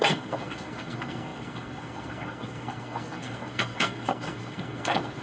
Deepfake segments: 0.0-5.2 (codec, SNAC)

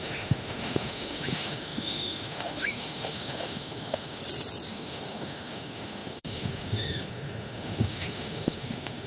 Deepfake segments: 0.0-4.2 (autoencoder, DAC-VAE); 4.7-9.1

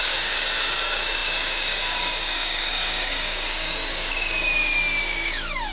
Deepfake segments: 0.0-5.7 (codec, DAC)

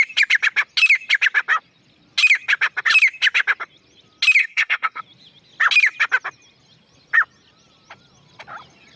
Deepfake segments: 4.4-5.0 (codec, SNAC)

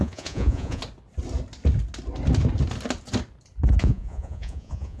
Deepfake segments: 0.0-0.8 (vocoder, Vocos); 3.8-5.0

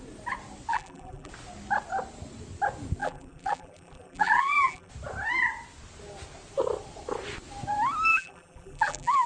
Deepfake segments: 0.7-1.3 (vocoder, BigVGAN v2); 3.0-4.9; 8.1-9.3

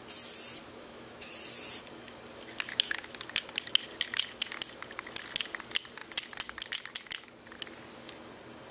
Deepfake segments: 0.6-1.3 (autoencoder, DAC-VAE); 2.7-3.3

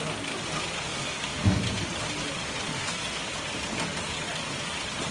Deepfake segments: 0.9-1.6 (codec, SNAC); 2.7-3.2